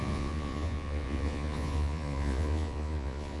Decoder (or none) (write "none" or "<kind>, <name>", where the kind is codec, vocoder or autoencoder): vocoder, Vocos